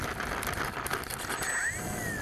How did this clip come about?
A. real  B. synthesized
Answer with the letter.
A